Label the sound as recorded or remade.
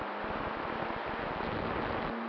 recorded